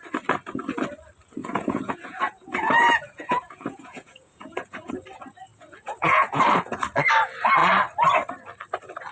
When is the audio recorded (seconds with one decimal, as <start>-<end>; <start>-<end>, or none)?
0.0-1.4; 4.9-5.5; 6.4-9.1